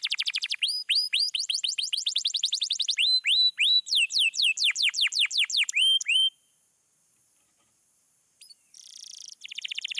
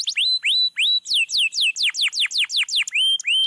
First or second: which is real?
second